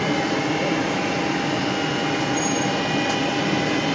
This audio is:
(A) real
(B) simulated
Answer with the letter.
A